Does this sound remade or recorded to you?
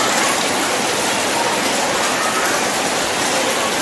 recorded